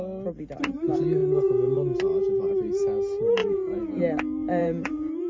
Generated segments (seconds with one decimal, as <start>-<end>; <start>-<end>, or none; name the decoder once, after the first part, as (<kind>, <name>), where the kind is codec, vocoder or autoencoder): 1.2-2.0 (vocoder, Vocos); 3.4-4.0; 4.6-5.3